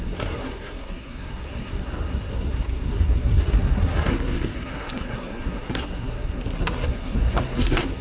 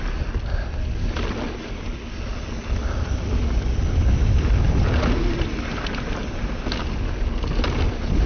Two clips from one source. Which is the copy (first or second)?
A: first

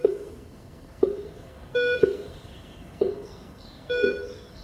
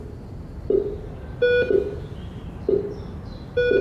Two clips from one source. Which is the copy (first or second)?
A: first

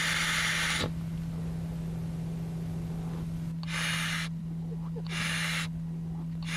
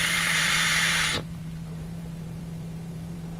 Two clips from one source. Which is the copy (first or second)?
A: second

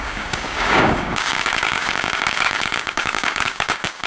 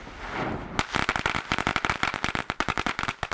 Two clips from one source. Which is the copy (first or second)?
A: first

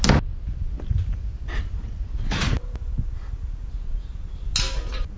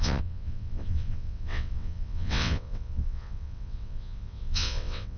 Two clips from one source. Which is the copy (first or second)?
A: second